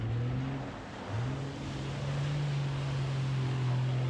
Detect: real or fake real